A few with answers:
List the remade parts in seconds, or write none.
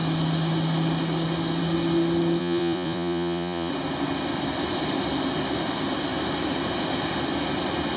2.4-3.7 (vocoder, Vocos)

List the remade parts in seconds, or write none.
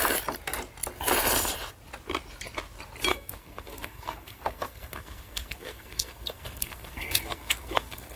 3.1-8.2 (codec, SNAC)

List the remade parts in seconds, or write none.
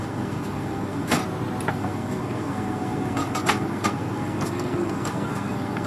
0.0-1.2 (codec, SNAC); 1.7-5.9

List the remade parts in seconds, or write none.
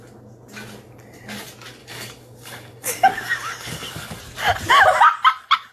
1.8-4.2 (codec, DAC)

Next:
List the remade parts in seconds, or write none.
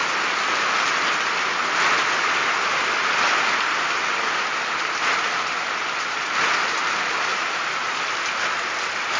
none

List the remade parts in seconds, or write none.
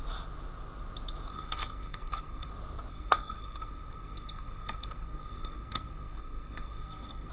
1.3-2.5 (codec, SNAC); 2.9-7.3